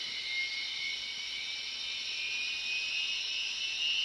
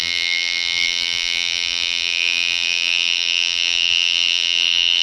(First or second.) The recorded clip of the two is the first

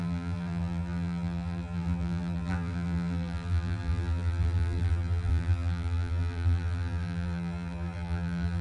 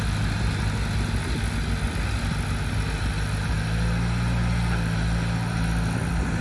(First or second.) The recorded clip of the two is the second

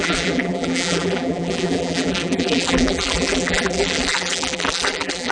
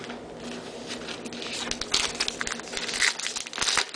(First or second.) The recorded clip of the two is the second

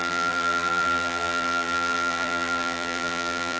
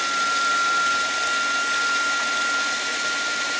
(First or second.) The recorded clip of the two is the second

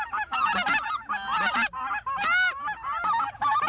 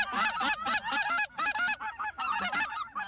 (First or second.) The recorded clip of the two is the first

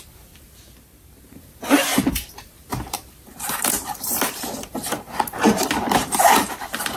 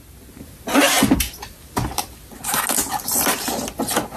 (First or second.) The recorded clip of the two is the second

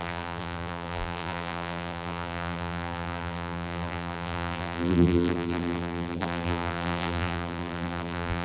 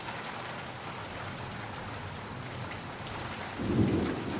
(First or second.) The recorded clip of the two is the second